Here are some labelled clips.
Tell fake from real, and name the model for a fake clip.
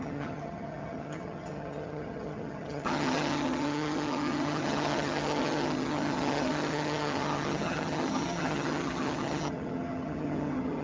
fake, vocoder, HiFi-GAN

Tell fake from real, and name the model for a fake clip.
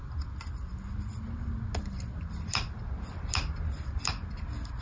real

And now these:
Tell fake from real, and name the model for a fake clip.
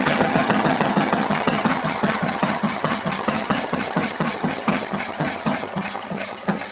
fake, vocoder, HiFi-GAN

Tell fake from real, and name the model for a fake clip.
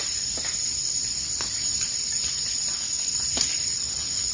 real